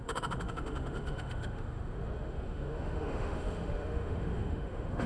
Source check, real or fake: fake